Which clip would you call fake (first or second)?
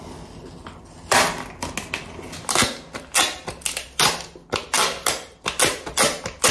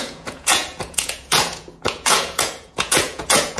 second